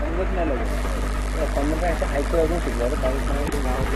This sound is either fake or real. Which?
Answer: fake